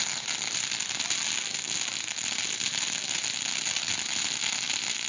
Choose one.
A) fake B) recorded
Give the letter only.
B